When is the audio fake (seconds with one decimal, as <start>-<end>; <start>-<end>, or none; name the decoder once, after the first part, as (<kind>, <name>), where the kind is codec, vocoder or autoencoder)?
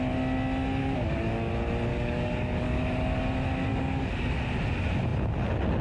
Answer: 0.8-1.5 (codec, DAC); 1.9-3.2; 3.7-4.4